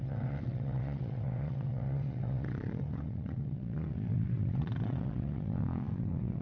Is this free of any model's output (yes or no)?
no